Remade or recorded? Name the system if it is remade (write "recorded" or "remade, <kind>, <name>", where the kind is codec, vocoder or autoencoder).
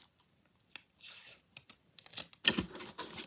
recorded